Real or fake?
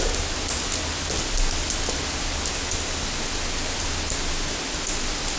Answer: real